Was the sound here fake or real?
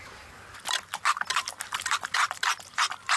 real